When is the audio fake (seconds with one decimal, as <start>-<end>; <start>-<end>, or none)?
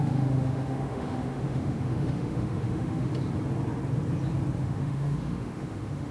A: 0.0-3.1; 4.6-6.1